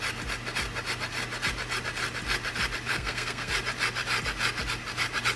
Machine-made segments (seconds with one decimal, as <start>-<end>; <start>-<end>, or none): 2.9-3.5